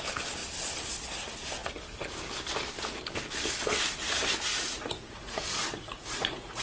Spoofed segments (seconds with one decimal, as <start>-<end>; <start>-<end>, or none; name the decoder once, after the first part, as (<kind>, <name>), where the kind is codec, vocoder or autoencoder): 4.5-6.6 (vocoder, Vocos)